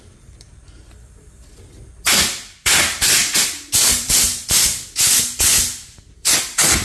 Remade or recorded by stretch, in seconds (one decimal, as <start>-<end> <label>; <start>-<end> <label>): 0.0-3.2 remade; 3.2-3.9 recorded; 3.9-4.4 remade; 4.4-6.1 recorded; 6.1-6.8 remade